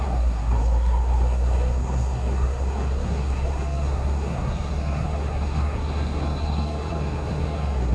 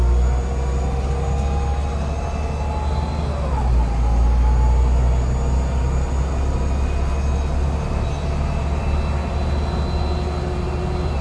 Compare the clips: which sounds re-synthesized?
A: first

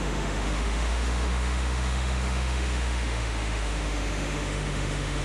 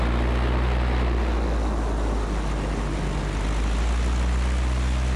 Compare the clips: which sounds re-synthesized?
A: first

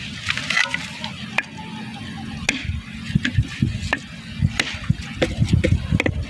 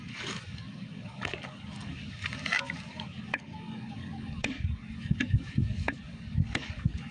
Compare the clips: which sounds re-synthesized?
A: second